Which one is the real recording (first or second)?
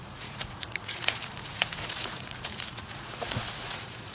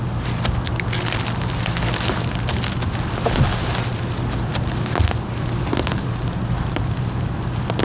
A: second